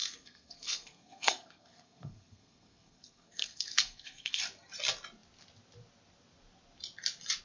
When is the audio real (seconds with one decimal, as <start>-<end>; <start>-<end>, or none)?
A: 4.4-7.4